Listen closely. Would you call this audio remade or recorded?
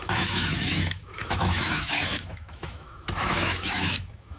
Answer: remade